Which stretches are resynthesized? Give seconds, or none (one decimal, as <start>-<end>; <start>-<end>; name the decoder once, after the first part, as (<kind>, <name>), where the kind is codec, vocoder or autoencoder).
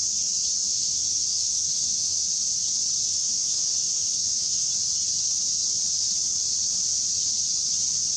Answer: 0.6-2.2 (autoencoder, DAC-VAE); 3.2-4.7